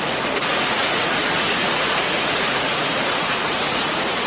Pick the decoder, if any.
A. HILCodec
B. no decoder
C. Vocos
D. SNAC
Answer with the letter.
C